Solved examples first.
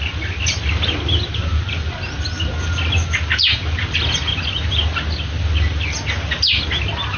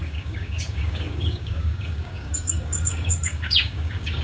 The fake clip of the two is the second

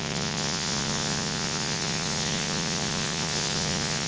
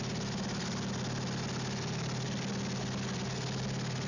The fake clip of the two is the first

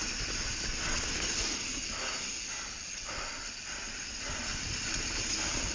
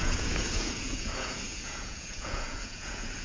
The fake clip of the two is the second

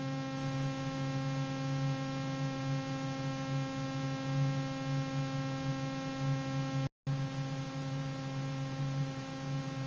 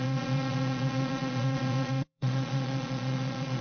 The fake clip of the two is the second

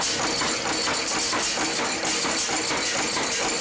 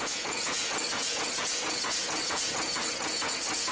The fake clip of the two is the second